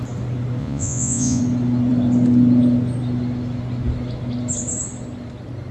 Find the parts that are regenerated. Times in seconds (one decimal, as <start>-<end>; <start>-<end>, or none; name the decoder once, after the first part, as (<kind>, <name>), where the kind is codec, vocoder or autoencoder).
0.6-1.4 (vocoder, Vocos)